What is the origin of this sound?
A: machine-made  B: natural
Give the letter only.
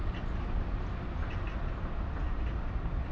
B